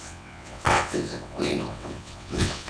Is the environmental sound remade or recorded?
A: remade